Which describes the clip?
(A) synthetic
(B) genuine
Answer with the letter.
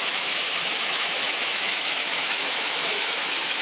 A